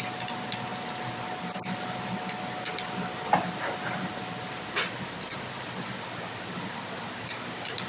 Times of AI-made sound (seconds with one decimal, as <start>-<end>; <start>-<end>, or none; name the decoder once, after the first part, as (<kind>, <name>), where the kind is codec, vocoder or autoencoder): none